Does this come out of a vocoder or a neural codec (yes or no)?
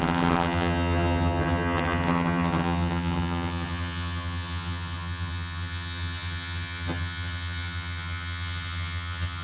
yes